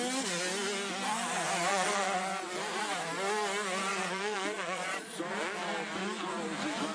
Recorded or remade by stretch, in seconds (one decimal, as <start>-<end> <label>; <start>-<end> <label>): 0.0-1.7 recorded; 1.7-2.2 remade; 2.2-3.9 recorded; 3.9-5.2 remade; 5.2-6.9 recorded